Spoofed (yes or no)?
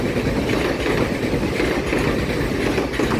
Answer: no